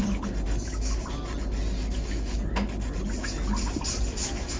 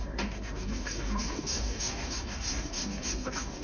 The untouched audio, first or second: first